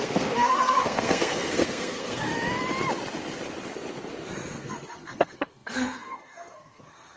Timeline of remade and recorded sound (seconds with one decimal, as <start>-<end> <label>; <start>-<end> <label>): 0.0-2.3 remade; 2.3-4.5 recorded; 4.5-7.2 remade